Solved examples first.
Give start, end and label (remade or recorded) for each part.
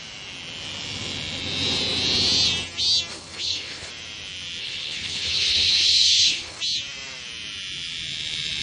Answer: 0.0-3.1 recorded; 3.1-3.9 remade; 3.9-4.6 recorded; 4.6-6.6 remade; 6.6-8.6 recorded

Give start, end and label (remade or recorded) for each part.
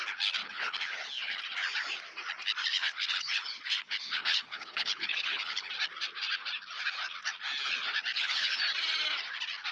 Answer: 0.0-0.4 recorded; 0.4-1.4 remade; 1.4-2.7 recorded; 2.7-5.7 remade; 5.7-8.1 recorded; 8.1-8.6 remade; 8.6-9.7 recorded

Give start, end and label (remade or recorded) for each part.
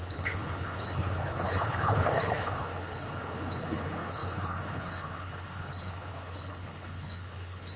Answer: 0.0-7.8 remade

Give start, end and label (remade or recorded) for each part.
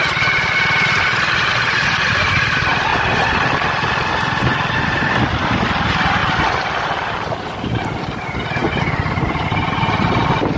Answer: 0.0-10.6 recorded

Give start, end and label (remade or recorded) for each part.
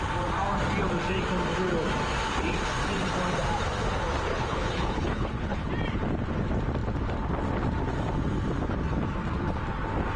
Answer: 0.0-4.3 recorded; 4.3-5.7 remade; 5.7-10.2 recorded